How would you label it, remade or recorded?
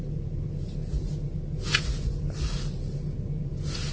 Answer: recorded